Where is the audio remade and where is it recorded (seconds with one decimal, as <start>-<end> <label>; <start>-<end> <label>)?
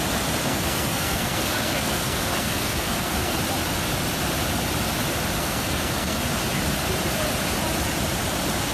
0.0-0.4 recorded; 0.4-3.4 remade; 3.4-5.4 recorded; 5.4-6.2 remade; 6.2-8.7 recorded